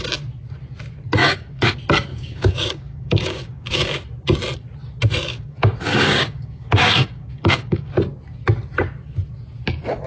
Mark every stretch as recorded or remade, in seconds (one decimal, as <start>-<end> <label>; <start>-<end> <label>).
0.0-1.2 recorded; 1.2-1.7 remade; 1.7-2.1 recorded; 2.1-4.0 remade; 4.0-5.3 recorded; 5.3-7.9 remade; 7.9-10.1 recorded